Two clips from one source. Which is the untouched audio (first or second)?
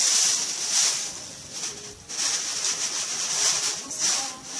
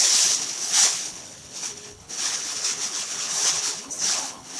first